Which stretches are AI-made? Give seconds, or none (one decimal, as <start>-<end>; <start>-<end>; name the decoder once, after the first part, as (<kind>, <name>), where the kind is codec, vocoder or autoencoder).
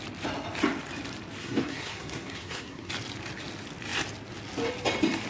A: 1.4-2.9 (codec, SNAC)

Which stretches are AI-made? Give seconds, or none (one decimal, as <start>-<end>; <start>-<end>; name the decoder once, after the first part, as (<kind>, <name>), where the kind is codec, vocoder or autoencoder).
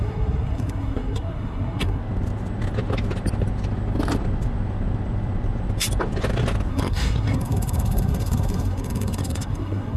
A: 0.0-2.0 (codec, SNAC); 6.7-10.0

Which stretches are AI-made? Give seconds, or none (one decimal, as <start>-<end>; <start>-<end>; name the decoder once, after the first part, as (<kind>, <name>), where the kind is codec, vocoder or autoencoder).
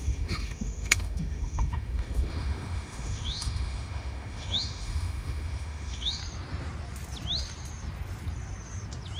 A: 0.0-6.2 (autoencoder, DAC-VAE)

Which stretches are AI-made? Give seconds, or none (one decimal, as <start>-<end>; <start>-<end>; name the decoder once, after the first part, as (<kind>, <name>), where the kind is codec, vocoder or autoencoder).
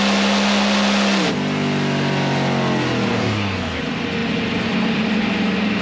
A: 3.1-3.8 (codec, DAC)